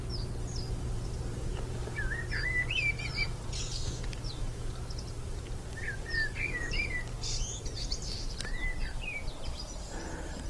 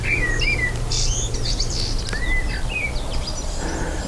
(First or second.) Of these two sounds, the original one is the second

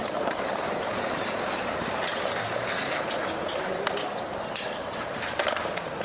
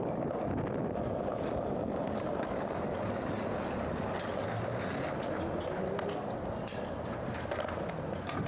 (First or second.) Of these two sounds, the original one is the second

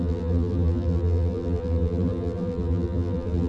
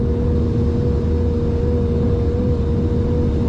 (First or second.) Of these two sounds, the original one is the second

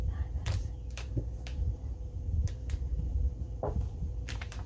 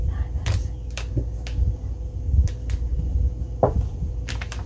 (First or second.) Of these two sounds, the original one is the second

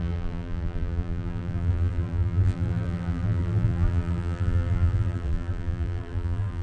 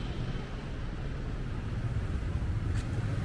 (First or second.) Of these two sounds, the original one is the second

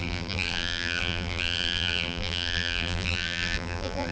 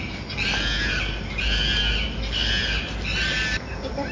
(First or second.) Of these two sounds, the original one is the second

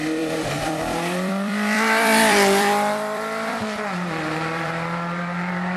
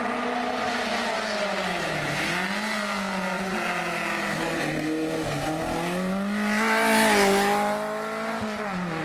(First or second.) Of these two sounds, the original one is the second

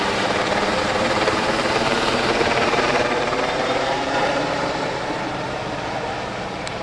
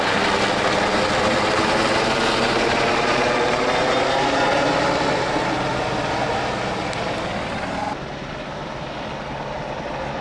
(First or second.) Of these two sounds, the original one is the second